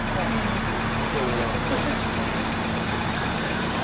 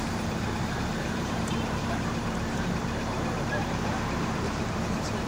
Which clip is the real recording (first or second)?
first